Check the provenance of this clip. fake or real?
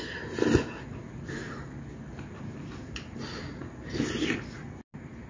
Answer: real